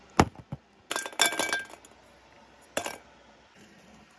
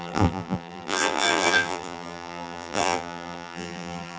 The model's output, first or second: second